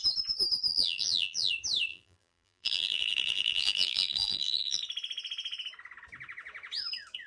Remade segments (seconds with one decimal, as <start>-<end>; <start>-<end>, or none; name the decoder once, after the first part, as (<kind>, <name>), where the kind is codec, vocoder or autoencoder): 0.7-1.5 (vocoder, BigVGAN v2); 1.9-4.8